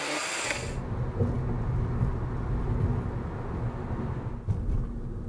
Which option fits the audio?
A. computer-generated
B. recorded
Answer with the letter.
B